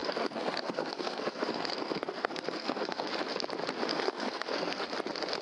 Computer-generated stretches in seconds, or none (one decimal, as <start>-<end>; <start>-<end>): 0.0-3.1; 3.9-4.8